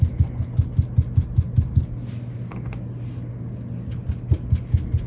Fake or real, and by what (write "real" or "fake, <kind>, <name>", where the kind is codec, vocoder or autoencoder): real